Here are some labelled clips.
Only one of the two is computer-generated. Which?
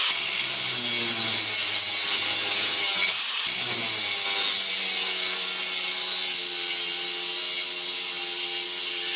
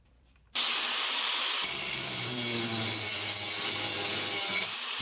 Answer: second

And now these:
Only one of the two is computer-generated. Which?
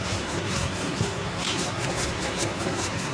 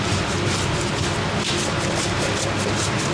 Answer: first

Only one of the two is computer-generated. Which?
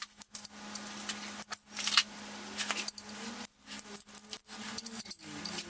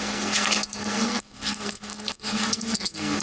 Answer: second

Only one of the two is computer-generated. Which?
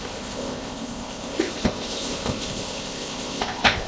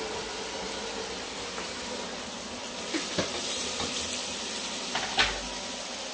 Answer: first